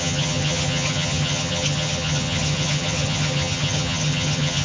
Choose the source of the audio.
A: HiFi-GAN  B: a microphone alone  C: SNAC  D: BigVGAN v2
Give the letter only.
A